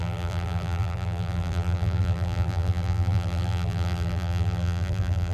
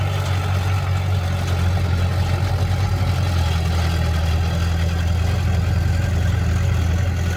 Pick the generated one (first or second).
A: first